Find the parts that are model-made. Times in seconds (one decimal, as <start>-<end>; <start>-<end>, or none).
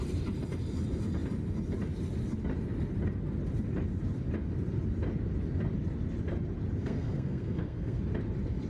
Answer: 6.8-8.0